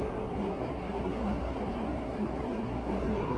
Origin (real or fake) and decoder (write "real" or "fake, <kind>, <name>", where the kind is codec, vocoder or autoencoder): fake, codec, SNAC